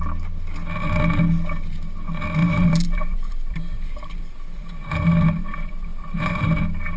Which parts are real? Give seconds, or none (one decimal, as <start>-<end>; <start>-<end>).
0.0-2.4; 6.6-7.0